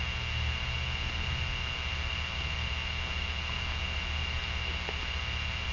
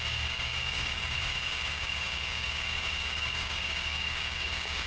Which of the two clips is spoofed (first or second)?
second